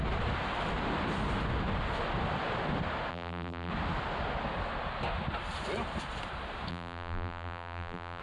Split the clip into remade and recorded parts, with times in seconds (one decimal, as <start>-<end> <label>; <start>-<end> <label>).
0.0-3.1 recorded; 3.1-3.7 remade; 3.7-6.7 recorded; 6.7-8.2 remade